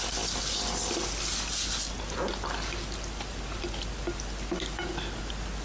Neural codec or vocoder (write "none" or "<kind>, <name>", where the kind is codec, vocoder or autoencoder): none